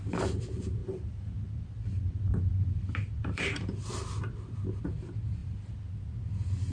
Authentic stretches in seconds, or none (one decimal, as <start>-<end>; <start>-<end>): 0.0-0.8; 4.8-5.4; 5.9-6.7